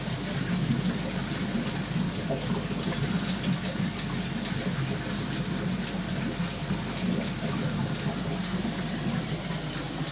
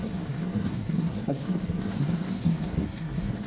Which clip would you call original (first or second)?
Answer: first